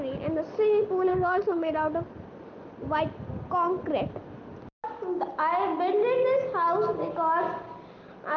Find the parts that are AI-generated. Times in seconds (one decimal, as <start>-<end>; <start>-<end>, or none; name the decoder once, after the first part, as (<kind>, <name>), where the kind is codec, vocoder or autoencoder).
1.1-1.7 (codec, HILCodec)